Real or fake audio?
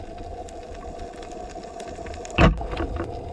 real